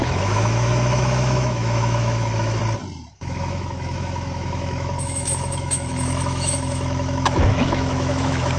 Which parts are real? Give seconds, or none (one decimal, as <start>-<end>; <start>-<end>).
2.6-3.1